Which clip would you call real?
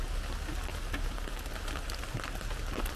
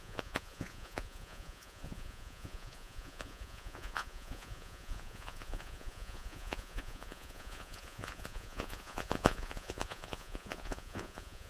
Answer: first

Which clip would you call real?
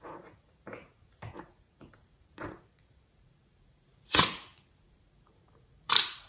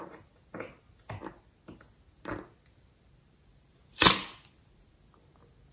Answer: second